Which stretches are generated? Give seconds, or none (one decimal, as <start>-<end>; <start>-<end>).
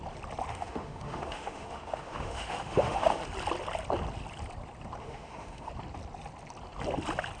0.5-3.2; 5.0-5.7